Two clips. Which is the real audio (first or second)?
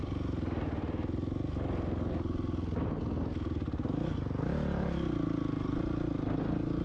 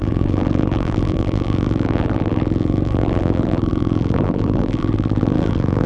first